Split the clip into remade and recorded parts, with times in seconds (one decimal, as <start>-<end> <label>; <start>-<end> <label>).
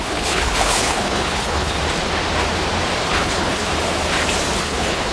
0.0-1.8 remade; 1.8-3.1 recorded; 3.1-3.7 remade; 3.7-4.6 recorded; 4.6-5.1 remade